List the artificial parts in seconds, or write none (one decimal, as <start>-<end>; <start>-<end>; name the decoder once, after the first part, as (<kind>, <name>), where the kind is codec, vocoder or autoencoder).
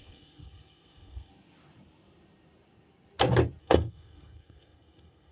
0.0-1.3 (codec, SNAC); 3.6-5.3